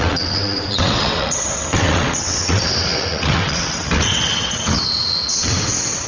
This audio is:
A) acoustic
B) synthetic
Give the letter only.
B